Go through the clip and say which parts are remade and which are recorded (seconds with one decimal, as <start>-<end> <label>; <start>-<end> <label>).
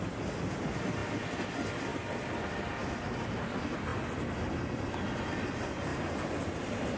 0.0-1.9 recorded; 1.9-3.5 remade; 3.5-5.9 recorded; 5.9-7.0 remade